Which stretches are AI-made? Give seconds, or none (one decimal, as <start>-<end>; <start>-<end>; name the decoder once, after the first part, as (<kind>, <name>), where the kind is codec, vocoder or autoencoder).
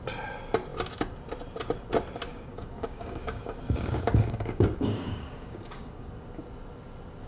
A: 2.3-6.1 (codec, DAC)